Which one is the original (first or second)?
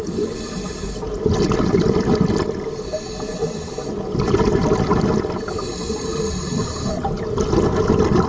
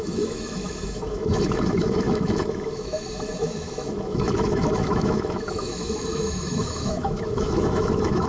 first